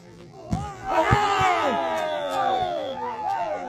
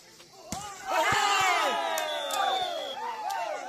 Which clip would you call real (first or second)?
second